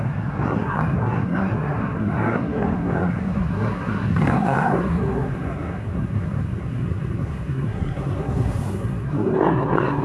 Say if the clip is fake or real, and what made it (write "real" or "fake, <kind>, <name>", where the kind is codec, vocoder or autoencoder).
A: fake, codec, SNAC